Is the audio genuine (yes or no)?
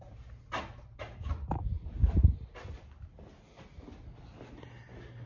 yes